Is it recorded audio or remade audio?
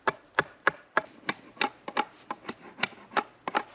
recorded